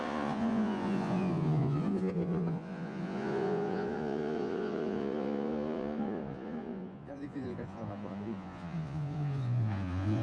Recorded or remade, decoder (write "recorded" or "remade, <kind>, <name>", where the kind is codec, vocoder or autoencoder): remade, vocoder, Vocos